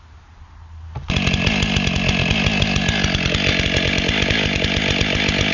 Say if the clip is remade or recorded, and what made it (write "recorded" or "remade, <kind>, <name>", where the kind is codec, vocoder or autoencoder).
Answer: recorded